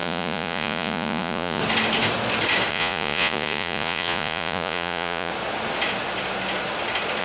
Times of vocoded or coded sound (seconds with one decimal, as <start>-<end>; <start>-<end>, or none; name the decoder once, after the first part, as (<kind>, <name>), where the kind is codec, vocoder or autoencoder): 0.0-1.6 (vocoder, Vocos); 2.7-5.3